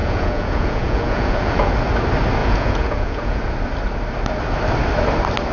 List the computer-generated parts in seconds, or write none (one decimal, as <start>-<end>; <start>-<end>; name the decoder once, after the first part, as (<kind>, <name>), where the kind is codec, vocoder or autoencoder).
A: 0.0-1.7 (vocoder, Vocos); 2.4-3.4